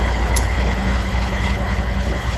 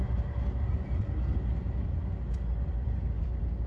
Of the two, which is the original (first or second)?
second